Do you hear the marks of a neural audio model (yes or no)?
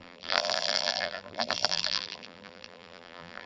yes